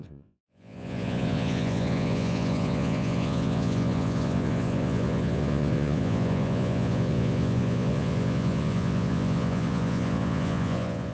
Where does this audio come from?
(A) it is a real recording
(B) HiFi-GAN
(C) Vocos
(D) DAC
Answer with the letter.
C